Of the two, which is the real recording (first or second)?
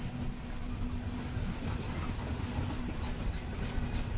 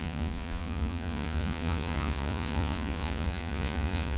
first